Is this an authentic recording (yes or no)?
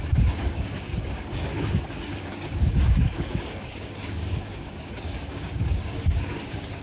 no